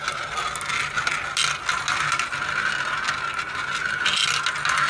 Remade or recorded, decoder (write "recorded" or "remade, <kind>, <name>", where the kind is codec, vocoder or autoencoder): recorded